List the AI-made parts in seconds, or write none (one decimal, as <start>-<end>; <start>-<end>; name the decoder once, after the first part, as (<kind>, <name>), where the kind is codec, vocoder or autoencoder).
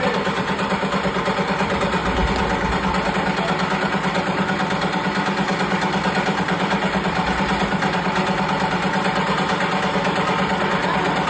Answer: none